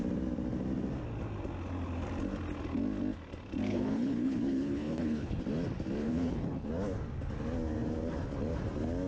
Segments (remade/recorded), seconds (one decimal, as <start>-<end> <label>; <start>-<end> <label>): 0.0-3.7 recorded; 3.7-5.4 remade; 5.4-6.0 recorded; 6.0-6.7 remade; 6.7-9.1 recorded